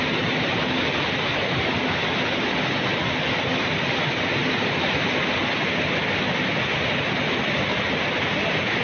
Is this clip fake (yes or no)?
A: no